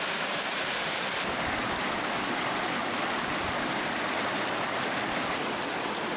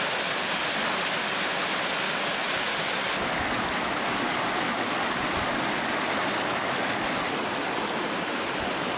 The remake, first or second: first